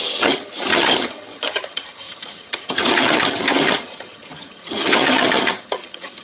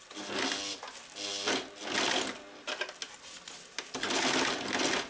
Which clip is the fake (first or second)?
first